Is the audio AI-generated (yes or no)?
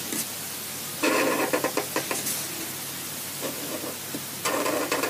no